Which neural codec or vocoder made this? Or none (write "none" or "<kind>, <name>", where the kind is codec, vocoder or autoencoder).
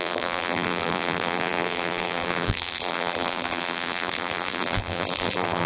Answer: vocoder, BigVGAN v2